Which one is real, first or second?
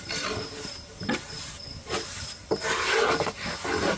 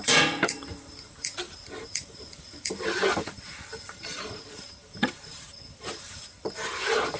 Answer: first